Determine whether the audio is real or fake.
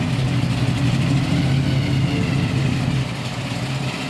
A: real